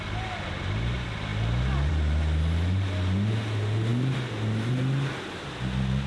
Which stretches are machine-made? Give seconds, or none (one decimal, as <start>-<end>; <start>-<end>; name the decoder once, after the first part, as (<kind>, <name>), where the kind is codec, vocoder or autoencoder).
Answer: none